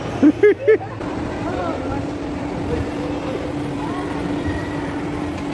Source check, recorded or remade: remade